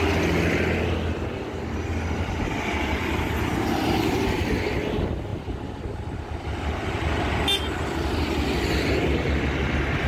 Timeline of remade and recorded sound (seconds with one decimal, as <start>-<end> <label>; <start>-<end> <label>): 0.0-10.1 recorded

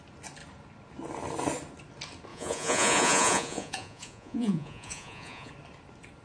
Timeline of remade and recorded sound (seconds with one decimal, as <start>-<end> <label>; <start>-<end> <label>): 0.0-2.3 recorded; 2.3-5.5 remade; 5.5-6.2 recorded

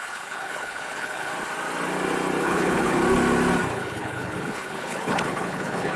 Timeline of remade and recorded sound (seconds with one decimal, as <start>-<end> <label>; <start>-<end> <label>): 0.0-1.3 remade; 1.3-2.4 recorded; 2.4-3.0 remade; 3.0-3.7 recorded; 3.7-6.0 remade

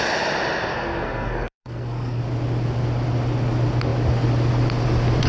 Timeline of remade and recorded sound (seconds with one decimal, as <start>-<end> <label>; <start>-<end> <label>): 0.0-0.7 recorded; 0.7-2.2 remade; 2.2-5.3 recorded

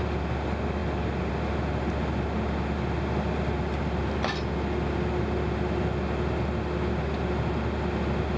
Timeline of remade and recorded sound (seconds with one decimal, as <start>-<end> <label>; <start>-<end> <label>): 0.0-8.4 recorded

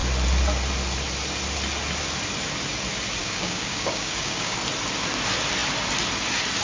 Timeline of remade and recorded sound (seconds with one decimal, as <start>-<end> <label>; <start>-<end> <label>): 0.0-3.2 recorded; 3.2-4.6 remade; 4.6-6.6 recorded